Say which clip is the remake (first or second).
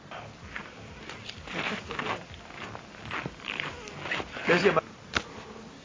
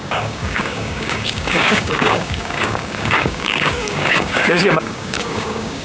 second